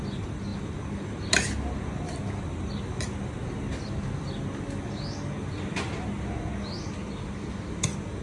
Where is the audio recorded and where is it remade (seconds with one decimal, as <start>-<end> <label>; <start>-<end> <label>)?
0.0-8.2 recorded